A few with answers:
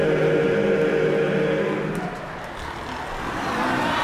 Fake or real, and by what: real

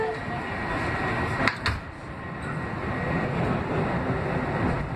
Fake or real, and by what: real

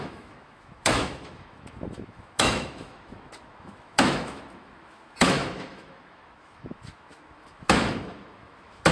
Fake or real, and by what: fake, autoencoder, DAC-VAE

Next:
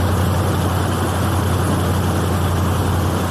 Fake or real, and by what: real